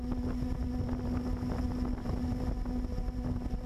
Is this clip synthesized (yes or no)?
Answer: no